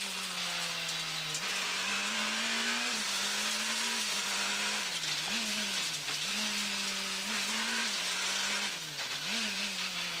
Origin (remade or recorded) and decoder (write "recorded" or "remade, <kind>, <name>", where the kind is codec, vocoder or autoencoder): recorded